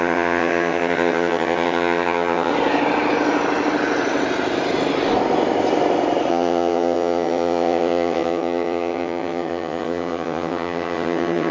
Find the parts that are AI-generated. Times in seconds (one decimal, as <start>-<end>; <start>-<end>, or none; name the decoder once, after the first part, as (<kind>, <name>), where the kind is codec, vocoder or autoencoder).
0.0-2.5 (vocoder, HiFi-GAN); 6.3-11.5